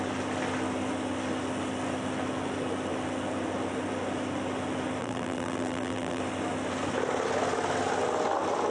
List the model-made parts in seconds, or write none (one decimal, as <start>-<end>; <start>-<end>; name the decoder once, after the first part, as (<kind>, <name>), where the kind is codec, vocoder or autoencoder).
5.0-6.2 (vocoder, BigVGAN v2)